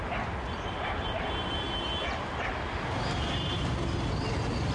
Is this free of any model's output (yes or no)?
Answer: yes